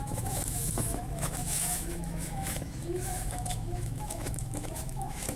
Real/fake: fake